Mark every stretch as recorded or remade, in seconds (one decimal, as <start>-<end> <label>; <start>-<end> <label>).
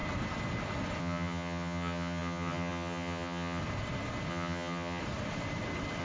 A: 0.0-1.0 recorded; 1.0-3.6 remade; 3.6-4.3 recorded; 4.3-5.0 remade; 5.0-6.0 recorded